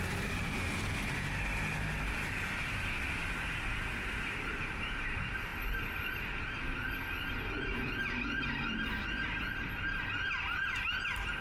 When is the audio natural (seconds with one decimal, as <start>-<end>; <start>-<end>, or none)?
0.0-11.4